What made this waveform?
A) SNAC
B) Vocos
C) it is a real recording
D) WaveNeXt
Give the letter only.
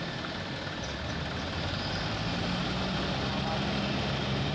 C